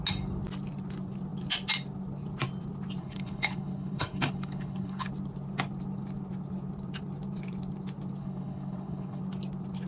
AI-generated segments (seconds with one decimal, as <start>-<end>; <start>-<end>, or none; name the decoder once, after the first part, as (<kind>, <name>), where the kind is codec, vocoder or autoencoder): 3.0-5.1 (codec, HILCodec); 8.2-9.2